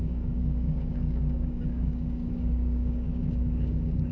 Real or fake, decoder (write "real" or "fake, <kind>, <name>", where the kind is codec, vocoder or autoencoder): fake, codec, DAC